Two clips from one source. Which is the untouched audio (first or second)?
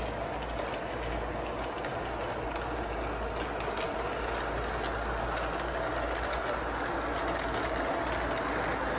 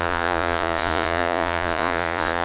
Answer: first